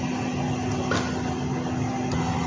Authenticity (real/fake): real